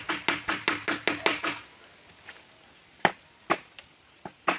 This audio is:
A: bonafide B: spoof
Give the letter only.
A